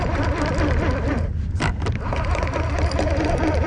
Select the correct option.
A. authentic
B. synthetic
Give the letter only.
A